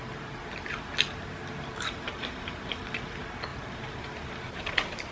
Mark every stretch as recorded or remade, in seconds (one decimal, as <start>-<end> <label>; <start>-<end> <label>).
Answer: 0.0-2.1 recorded; 2.1-2.8 remade; 2.8-3.5 recorded; 3.5-4.6 remade; 4.6-5.1 recorded